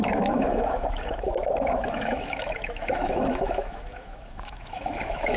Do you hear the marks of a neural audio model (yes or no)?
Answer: yes